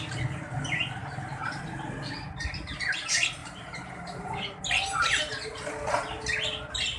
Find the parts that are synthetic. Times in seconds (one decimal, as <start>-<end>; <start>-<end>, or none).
1.0-1.7; 3.4-4.6